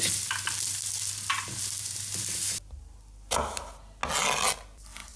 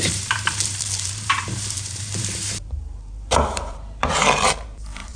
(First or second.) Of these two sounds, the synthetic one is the second